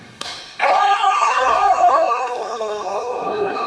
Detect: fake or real fake